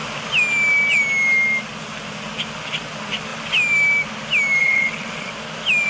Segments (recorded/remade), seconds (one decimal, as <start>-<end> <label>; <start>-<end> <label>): 0.0-4.6 recorded; 4.6-5.3 remade; 5.3-5.9 recorded